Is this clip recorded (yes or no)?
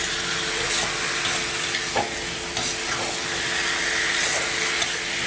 yes